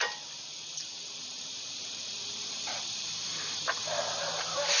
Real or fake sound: real